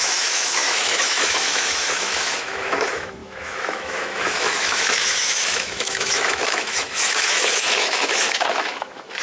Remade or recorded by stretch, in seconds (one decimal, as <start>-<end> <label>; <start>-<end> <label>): 0.0-9.2 remade